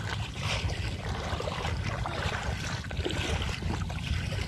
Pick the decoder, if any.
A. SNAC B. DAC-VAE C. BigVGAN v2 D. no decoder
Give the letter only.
D